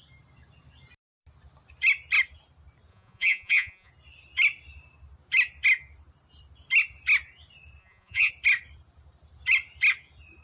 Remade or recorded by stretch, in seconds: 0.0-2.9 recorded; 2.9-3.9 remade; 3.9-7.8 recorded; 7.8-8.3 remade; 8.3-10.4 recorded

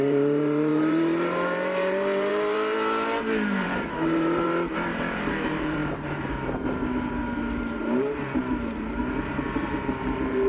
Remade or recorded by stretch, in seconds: 0.0-10.5 remade

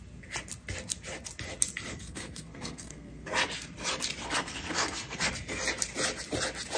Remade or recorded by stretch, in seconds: 0.0-1.9 recorded; 1.9-3.3 remade; 3.3-4.2 recorded; 4.2-5.3 remade; 5.3-6.8 recorded